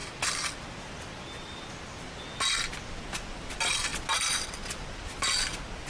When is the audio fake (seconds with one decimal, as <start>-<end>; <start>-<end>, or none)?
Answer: none